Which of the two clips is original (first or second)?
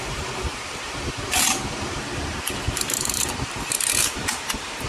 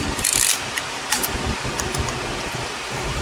second